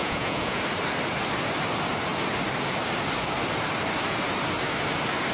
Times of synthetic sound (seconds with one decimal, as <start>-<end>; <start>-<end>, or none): 0.0-0.6